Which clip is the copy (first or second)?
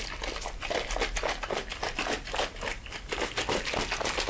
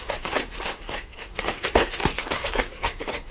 second